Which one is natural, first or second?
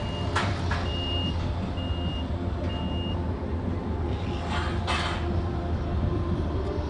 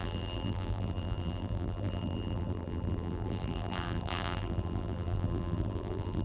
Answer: first